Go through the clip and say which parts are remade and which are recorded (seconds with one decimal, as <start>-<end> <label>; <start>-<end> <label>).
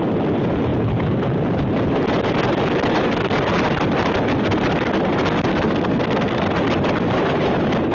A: 0.0-5.5 recorded; 5.5-6.5 remade; 6.5-7.9 recorded